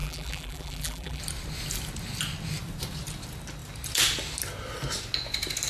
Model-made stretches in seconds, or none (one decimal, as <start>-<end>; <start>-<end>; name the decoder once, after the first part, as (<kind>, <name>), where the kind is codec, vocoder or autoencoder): 0.0-1.2 (vocoder, BigVGAN v2)